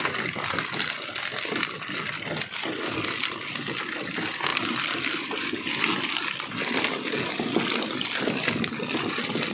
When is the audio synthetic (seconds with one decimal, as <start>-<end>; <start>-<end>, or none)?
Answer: none